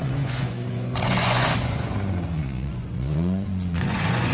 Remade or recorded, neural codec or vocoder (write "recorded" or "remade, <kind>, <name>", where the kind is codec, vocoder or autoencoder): remade, vocoder, Vocos